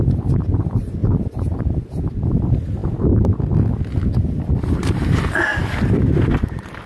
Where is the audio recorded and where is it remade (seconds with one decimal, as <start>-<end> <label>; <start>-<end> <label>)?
0.0-1.0 remade; 1.0-2.3 recorded; 2.3-2.8 remade; 2.8-4.5 recorded; 4.5-5.5 remade; 5.5-6.0 recorded; 6.0-6.9 remade